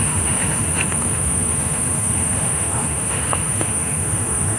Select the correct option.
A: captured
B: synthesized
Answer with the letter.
B